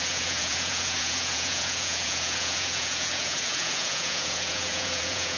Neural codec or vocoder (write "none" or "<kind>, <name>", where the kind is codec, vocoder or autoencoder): vocoder, Vocos